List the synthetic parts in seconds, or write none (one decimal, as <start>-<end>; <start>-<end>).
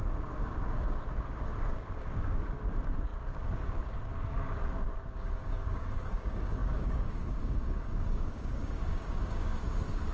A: 0.0-10.1